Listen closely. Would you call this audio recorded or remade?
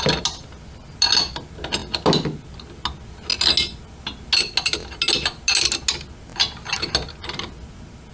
recorded